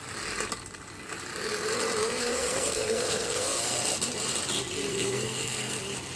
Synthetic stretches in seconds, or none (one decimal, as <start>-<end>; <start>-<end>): 2.0-3.8; 4.9-5.8